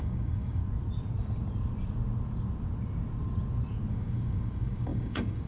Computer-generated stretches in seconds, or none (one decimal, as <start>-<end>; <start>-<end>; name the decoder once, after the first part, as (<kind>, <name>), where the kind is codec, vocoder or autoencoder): 0.0-0.6 (codec, DAC); 3.9-5.5